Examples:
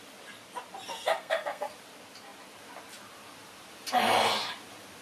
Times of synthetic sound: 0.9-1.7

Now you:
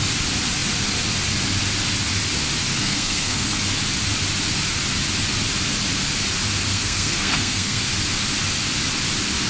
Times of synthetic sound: 2.7-3.6; 6.7-7.8

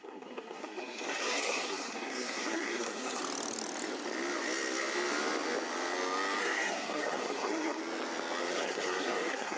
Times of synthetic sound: 0.0-3.2; 6.4-7.8; 8.4-9.6

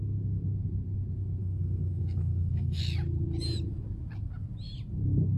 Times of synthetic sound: 1.4-2.8

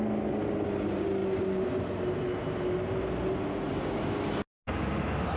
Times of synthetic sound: none

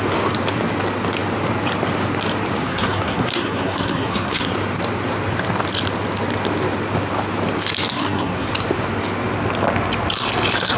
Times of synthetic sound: 2.6-4.5; 7.9-8.5

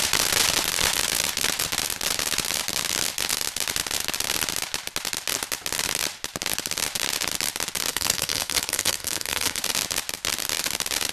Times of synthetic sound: 7.9-9.6